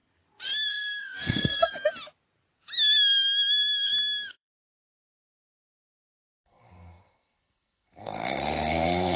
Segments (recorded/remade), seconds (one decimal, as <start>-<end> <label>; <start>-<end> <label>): 0.0-0.7 recorded; 0.7-1.7 remade; 1.7-4.3 recorded; 4.3-9.2 remade